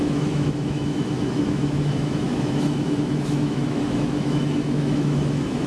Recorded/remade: remade